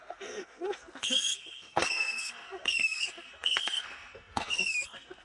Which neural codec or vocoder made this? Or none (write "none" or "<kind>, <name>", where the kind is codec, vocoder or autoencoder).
codec, SNAC